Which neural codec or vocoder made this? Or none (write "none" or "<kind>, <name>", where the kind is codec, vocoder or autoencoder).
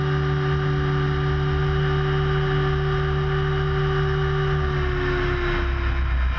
none